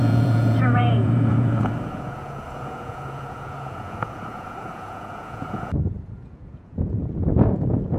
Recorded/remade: remade